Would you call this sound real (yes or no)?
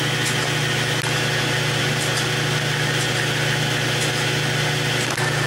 yes